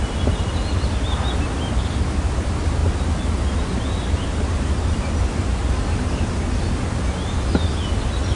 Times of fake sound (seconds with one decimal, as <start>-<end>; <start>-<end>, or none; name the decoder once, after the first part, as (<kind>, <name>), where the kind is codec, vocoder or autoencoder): none